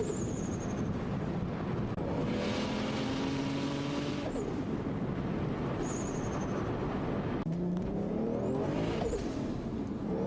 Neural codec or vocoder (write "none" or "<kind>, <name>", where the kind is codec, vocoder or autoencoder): none